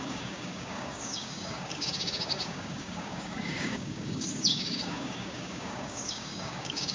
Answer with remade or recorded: remade